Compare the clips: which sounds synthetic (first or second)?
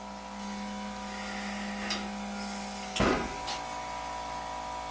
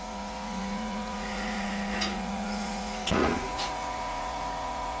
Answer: second